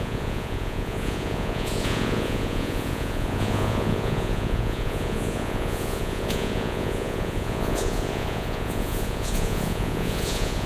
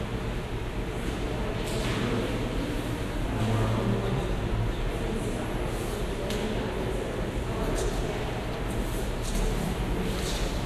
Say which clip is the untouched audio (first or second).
second